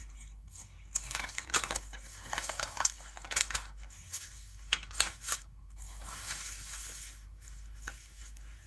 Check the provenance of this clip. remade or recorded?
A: remade